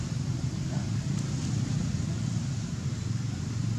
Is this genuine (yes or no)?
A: yes